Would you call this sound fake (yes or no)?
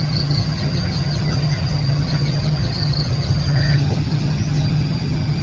yes